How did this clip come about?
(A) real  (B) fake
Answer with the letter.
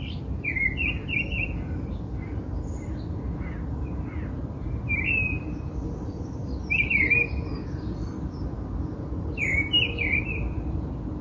A